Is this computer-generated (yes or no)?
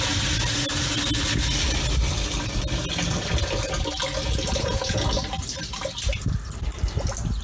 no